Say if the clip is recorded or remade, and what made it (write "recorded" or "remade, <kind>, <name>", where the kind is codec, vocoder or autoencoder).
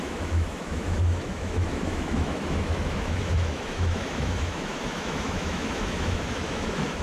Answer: remade, autoencoder, DAC-VAE